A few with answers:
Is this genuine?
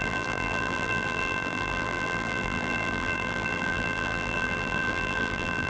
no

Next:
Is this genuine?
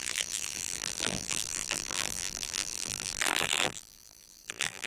no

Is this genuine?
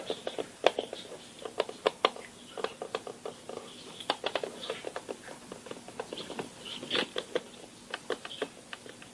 yes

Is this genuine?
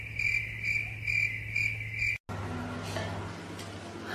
yes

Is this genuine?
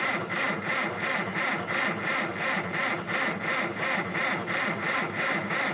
no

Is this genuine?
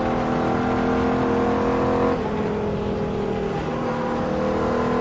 yes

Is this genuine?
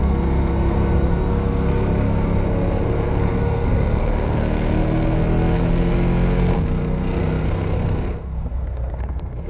no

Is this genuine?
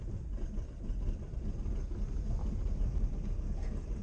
yes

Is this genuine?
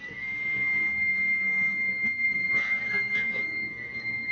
no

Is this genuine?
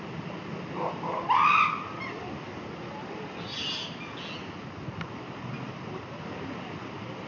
yes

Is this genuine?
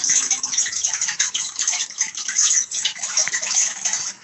no